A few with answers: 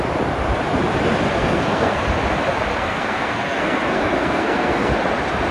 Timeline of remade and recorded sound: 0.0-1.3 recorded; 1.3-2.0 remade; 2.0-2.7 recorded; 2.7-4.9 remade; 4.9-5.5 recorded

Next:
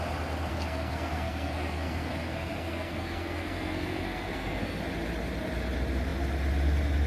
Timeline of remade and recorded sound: 0.0-0.5 recorded; 0.5-4.8 remade; 4.8-7.1 recorded

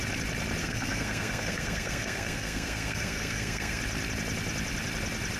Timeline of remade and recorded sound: 0.0-0.6 recorded; 0.6-3.8 remade; 3.8-5.4 recorded

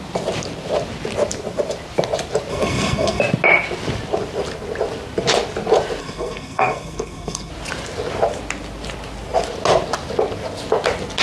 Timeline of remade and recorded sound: 0.0-2.5 recorded; 2.5-3.2 remade; 3.2-6.0 recorded; 6.0-7.5 remade; 7.5-11.2 recorded

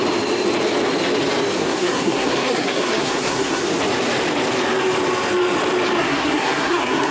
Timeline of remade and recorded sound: 0.0-1.6 recorded; 1.6-3.6 remade; 3.6-6.0 recorded; 6.0-7.1 remade

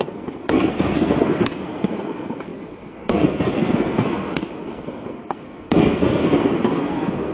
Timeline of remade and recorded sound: 0.0-7.3 remade